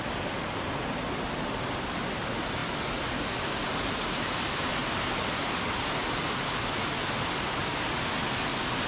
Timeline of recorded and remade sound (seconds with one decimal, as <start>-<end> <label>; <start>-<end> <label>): 0.0-4.8 recorded; 4.8-5.5 remade; 5.5-6.0 recorded; 6.0-7.7 remade; 7.7-8.9 recorded